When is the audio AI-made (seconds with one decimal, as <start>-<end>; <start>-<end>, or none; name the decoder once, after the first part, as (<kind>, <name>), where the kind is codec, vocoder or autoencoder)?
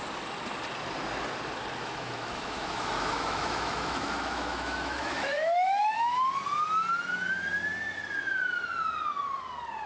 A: 1.8-6.2 (autoencoder, DAC-VAE)